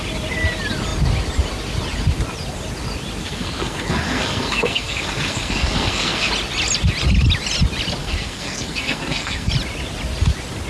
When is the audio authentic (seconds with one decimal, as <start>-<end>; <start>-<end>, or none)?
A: 0.0-3.2; 6.3-8.0; 9.5-10.7